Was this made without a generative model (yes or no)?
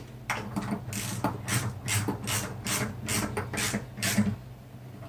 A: yes